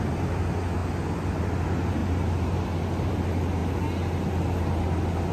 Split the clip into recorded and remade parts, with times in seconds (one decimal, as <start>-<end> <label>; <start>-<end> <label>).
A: 0.0-5.3 recorded

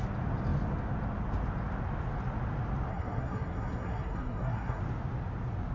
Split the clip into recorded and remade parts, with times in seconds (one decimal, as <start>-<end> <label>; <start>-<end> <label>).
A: 0.0-2.9 recorded; 2.9-4.8 remade; 4.8-5.7 recorded

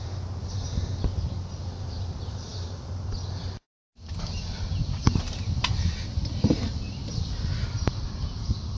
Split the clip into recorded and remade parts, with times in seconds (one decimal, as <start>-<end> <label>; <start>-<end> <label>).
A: 0.0-8.8 recorded

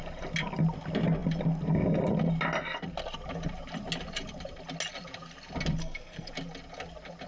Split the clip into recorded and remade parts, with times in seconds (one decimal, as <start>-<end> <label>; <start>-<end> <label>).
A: 0.0-5.8 recorded; 5.8-6.3 remade; 6.3-7.3 recorded

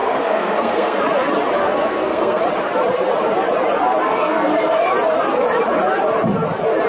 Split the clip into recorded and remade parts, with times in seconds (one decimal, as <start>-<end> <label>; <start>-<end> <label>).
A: 0.0-1.0 remade; 1.0-1.6 recorded; 1.6-2.4 remade; 2.4-4.0 recorded; 4.0-4.9 remade; 4.9-6.9 recorded

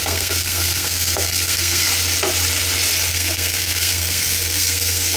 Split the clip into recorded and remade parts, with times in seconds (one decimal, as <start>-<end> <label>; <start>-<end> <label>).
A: 0.0-1.9 remade; 1.9-3.1 recorded; 3.1-5.2 remade